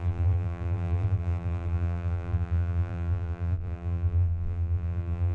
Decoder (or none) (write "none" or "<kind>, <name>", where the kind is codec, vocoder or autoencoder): vocoder, BigVGAN v2